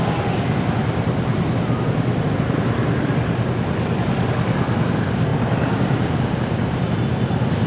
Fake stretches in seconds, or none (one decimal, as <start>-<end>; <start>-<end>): none